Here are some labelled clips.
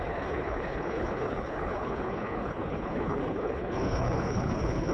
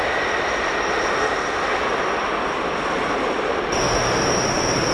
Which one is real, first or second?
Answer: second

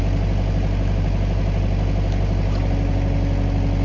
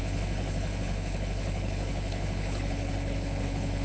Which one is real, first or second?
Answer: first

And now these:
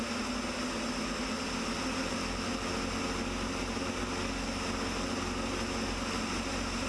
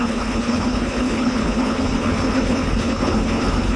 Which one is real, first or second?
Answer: first